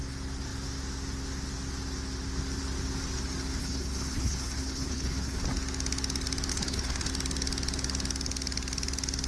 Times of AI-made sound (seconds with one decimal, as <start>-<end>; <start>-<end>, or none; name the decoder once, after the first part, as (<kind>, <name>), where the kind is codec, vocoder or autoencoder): 3.6-5.4 (codec, HILCodec); 6.5-7.1

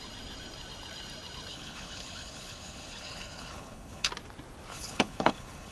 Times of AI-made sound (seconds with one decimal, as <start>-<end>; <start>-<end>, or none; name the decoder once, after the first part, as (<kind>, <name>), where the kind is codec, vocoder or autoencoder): 1.5-4.1 (codec, HILCodec); 4.7-5.7

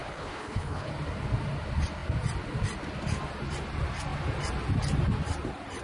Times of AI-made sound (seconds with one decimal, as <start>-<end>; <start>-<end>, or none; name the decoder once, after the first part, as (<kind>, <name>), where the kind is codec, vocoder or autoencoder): 0.0-0.9 (codec, HILCodec)

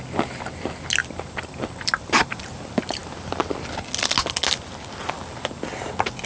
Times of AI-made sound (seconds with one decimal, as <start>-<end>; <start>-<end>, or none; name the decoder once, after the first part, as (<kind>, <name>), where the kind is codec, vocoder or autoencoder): none

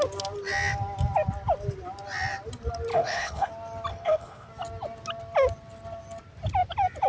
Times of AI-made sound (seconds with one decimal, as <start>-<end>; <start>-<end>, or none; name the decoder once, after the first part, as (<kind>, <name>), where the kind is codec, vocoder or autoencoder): 2.9-3.5 (codec, HILCodec); 3.9-4.5